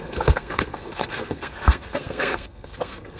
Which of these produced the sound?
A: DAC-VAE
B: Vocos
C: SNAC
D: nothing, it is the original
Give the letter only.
C